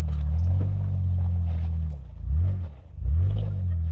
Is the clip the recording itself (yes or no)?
yes